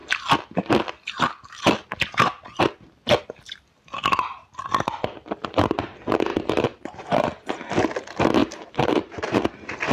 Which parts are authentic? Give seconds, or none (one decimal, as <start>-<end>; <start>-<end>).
0.0-6.3; 7.0-8.4; 9.4-9.9